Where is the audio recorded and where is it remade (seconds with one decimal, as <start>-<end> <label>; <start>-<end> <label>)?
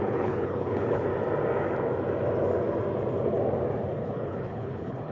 0.0-1.1 remade; 1.1-3.9 recorded; 3.9-5.1 remade